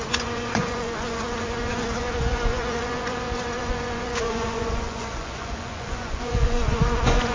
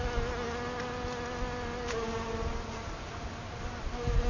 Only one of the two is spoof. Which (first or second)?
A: first